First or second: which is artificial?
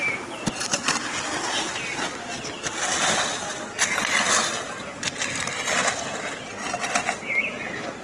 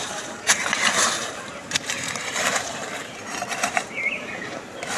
second